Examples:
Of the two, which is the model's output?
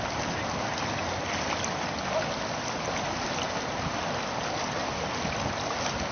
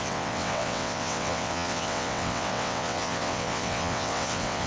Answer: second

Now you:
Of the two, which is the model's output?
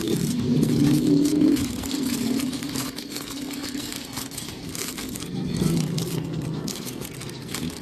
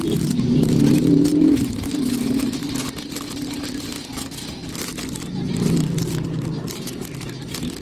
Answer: first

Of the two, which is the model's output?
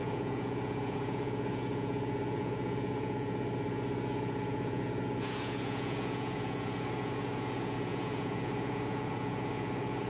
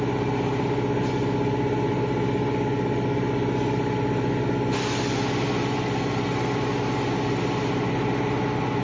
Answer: first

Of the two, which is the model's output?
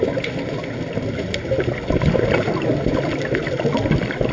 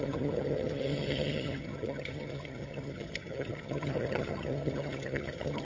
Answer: second